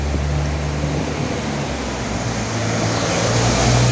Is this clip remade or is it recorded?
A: recorded